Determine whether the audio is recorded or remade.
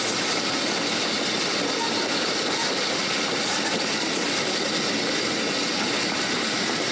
recorded